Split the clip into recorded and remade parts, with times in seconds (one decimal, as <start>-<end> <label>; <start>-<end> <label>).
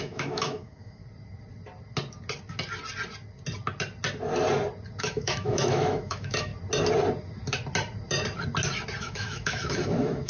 0.0-1.0 remade; 1.0-5.0 recorded; 5.0-6.5 remade; 6.5-9.0 recorded; 9.0-10.3 remade